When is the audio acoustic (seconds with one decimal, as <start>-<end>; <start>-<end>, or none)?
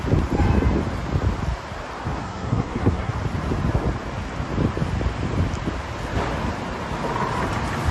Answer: 0.0-2.2; 3.1-7.9